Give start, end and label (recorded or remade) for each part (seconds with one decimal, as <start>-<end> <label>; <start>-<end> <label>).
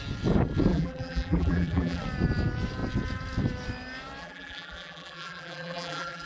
0.0-0.7 recorded; 0.7-2.0 remade; 2.0-4.2 recorded; 4.2-6.3 remade